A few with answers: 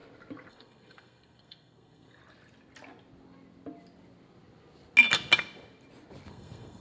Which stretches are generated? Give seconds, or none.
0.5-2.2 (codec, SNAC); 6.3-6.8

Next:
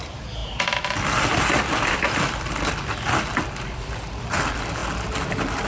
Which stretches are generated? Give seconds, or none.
0.0-0.4 (vocoder, BigVGAN v2); 1.7-4.8

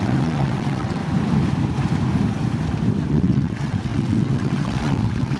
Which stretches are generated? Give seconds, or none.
0.0-1.0 (vocoder, WaveNeXt); 3.1-5.4

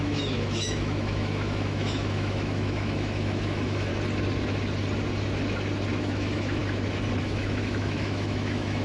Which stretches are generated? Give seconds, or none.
0.0-3.9 (autoencoder, DAC-VAE); 6.0-6.6; 7.2-8.8

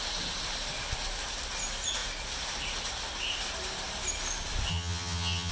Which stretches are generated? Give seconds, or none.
4.7-5.5 (vocoder, HiFi-GAN)

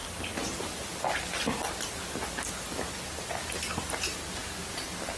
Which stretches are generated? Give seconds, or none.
0.0-2.3 (vocoder, BigVGAN v2)

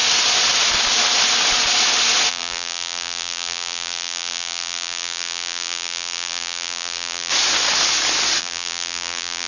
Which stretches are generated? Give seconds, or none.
2.3-7.3 (vocoder, BigVGAN v2); 8.4-9.5